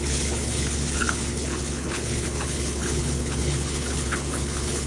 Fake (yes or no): yes